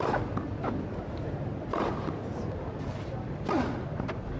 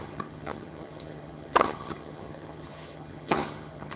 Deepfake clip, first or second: second